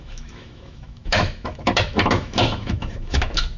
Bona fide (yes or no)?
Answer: no